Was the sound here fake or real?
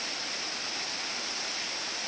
real